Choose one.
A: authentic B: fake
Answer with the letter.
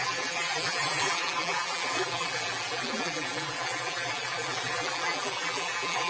B